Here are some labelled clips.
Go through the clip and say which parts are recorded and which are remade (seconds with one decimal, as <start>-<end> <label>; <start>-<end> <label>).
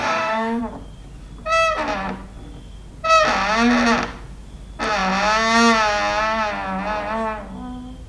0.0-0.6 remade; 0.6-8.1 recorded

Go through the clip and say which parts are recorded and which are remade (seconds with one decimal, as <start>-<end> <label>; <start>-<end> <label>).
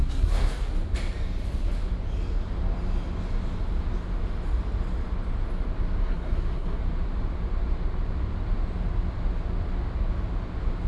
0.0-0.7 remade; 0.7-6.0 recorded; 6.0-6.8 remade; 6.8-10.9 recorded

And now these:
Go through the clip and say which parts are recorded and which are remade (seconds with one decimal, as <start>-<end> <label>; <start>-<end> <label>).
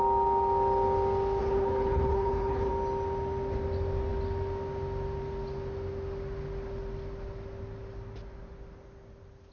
0.0-1.4 recorded; 1.4-2.7 remade; 2.7-9.5 recorded